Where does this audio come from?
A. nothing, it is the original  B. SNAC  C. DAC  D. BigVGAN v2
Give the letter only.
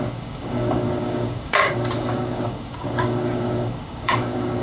C